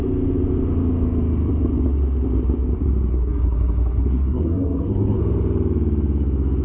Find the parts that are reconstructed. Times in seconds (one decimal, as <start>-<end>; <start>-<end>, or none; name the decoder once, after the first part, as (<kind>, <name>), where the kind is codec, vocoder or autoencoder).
3.1-5.2 (codec, SNAC)